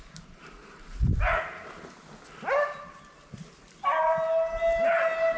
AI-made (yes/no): no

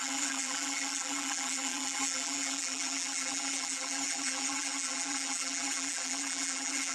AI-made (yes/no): yes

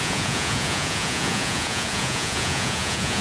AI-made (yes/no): yes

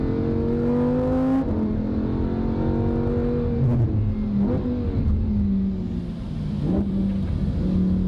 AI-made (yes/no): no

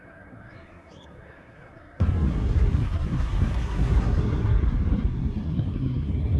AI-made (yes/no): yes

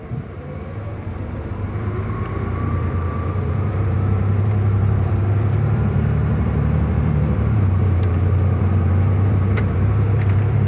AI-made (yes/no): yes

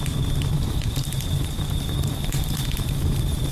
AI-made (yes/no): yes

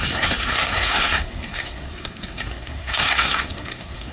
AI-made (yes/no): yes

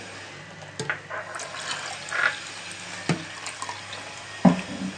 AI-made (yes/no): no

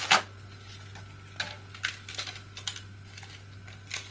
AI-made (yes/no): no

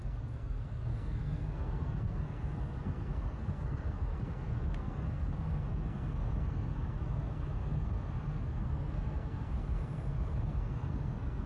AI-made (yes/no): yes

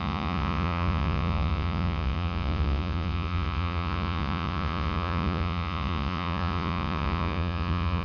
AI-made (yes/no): yes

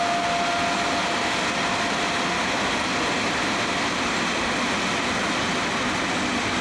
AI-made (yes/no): no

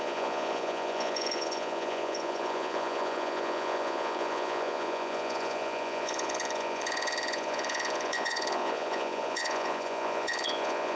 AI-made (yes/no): yes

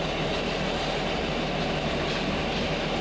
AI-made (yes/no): no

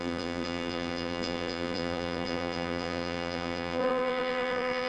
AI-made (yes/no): yes